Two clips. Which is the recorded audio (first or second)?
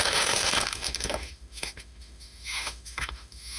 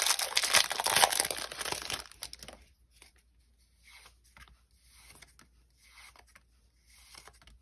second